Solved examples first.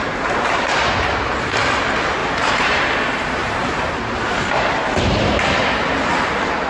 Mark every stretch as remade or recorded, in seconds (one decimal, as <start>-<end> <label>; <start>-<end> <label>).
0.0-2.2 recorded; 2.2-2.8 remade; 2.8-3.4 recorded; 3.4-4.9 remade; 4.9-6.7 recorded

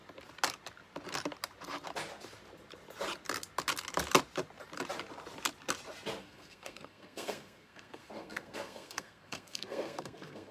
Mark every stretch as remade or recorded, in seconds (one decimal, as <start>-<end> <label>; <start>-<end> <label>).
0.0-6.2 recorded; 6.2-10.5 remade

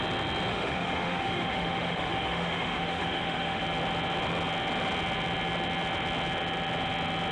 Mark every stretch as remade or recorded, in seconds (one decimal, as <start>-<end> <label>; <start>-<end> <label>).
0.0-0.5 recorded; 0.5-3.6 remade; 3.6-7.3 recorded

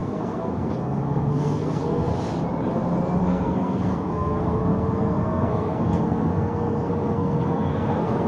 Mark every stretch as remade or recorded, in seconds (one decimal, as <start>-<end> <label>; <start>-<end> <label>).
0.0-2.1 remade; 2.1-3.2 recorded; 3.2-8.3 remade